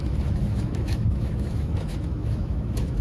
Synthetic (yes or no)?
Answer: yes